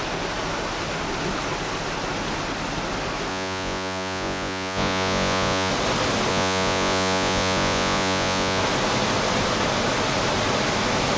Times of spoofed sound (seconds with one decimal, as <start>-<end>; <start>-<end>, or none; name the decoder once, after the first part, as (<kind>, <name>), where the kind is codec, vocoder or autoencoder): 3.3-5.7 (vocoder, Vocos); 6.3-8.6